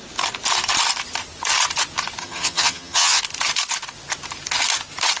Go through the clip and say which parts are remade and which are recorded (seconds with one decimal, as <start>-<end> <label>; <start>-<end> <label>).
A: 0.0-2.2 recorded; 2.2-3.2 remade; 3.2-5.2 recorded